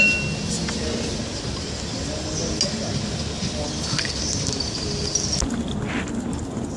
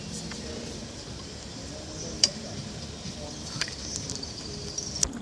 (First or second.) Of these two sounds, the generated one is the second